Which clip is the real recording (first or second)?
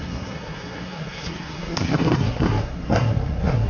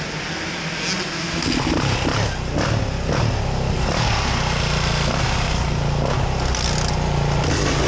second